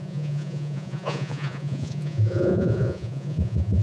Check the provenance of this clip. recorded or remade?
remade